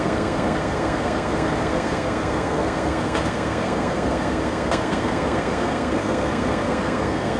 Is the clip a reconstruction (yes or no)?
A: yes